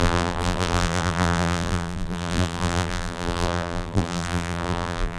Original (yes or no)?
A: no